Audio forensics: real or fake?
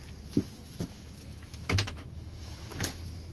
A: fake